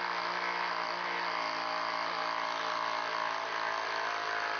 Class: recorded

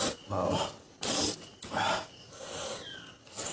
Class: recorded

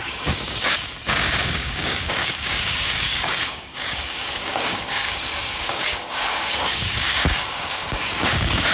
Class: remade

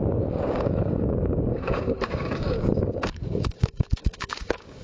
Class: remade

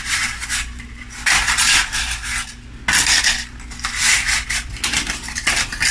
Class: recorded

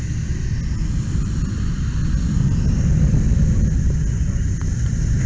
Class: recorded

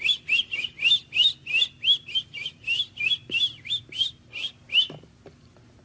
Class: recorded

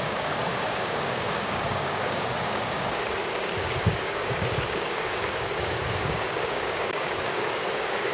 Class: remade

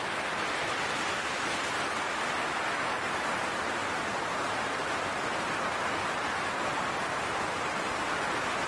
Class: recorded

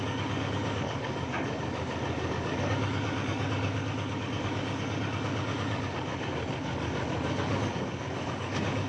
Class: remade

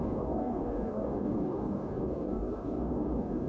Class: remade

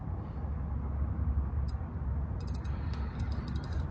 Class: recorded